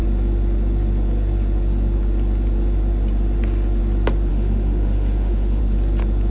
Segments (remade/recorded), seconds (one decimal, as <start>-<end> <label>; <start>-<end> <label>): 0.0-4.3 recorded; 4.3-5.6 remade; 5.6-6.3 recorded

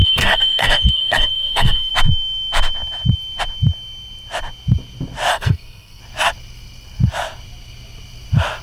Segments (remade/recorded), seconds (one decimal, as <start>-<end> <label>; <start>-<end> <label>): 0.0-1.9 remade; 1.9-5.3 recorded; 5.3-6.0 remade; 6.0-8.6 recorded